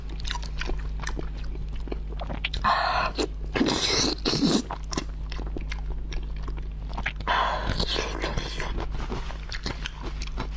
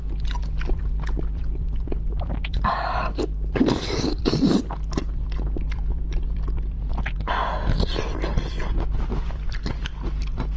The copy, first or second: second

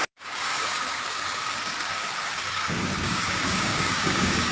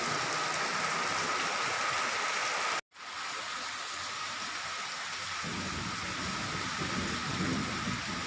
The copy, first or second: first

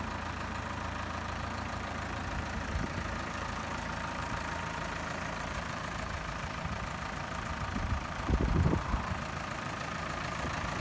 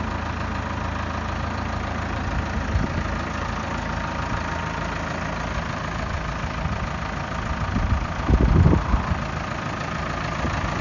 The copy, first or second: first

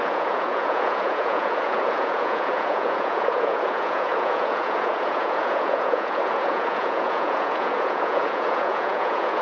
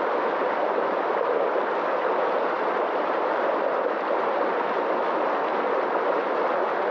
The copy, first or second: first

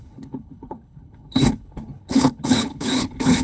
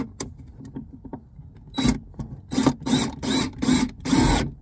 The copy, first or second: first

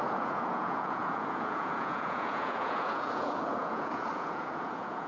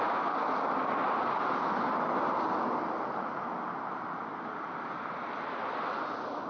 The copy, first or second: first